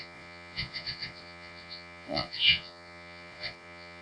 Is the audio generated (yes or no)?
yes